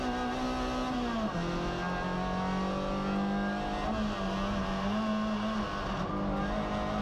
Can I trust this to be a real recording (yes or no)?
yes